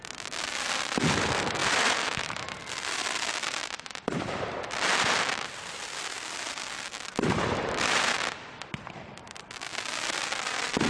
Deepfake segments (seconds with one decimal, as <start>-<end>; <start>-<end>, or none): 0.0-10.9